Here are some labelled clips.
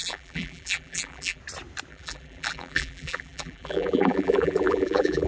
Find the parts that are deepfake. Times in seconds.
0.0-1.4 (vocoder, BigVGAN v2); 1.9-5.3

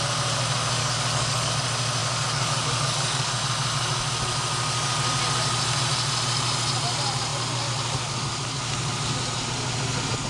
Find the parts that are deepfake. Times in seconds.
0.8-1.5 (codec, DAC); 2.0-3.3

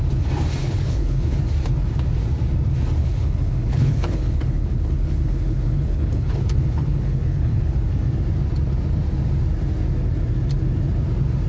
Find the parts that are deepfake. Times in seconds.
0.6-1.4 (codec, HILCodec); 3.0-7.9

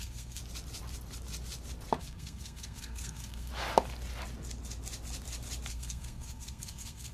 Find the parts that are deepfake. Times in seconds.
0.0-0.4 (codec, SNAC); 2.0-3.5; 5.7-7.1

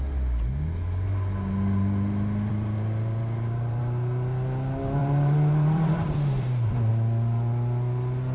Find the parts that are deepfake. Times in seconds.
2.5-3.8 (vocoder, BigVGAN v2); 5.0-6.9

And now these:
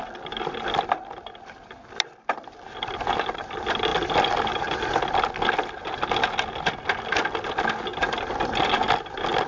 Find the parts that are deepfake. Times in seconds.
none

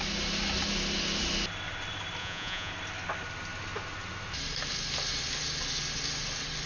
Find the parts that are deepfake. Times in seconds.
2.2-2.7 (vocoder, Vocos)

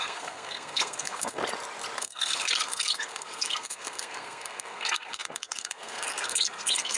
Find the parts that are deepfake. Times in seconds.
0.0-1.4 (codec, SNAC); 2.0-7.0